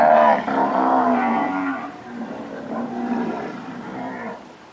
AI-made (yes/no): yes